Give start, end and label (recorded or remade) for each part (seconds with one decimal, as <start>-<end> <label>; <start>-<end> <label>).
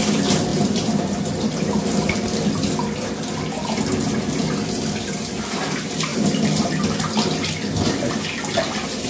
0.0-0.5 recorded; 0.5-1.8 remade; 1.8-6.1 recorded; 6.1-6.7 remade; 6.7-9.1 recorded